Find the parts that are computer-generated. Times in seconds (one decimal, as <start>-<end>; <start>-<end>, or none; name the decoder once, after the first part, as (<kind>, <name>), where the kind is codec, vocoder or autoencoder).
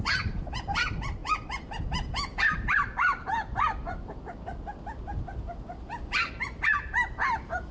none